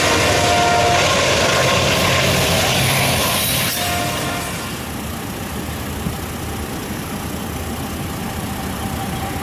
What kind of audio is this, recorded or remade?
recorded